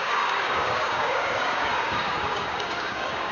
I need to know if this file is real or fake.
fake